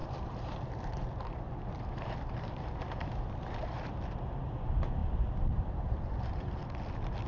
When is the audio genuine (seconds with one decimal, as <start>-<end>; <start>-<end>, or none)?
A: 5.0-6.1; 6.6-7.3